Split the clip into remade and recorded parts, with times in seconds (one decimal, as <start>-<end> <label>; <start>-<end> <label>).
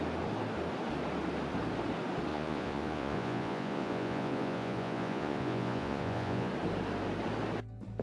0.0-2.3 recorded; 2.3-6.5 remade; 6.5-8.0 recorded